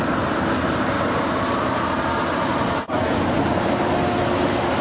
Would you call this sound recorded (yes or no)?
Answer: yes